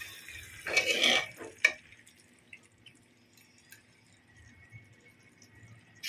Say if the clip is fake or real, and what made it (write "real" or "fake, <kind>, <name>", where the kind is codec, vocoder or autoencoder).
real